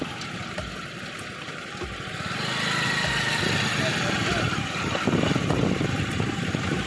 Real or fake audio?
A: real